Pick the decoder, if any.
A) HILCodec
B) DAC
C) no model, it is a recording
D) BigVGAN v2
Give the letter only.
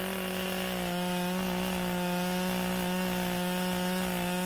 C